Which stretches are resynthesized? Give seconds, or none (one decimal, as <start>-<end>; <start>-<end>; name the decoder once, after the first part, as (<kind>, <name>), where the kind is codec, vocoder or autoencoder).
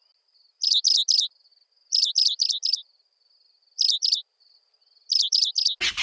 none